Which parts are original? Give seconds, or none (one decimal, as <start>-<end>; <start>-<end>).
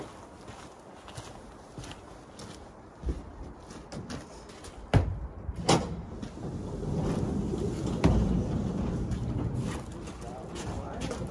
0.0-11.3